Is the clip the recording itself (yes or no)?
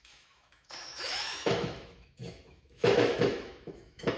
no